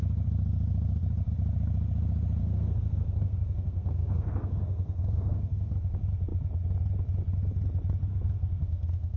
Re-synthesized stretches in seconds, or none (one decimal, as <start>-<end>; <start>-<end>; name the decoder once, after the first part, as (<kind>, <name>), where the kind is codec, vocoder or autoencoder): 2.4-5.7 (codec, SNAC); 8.1-9.2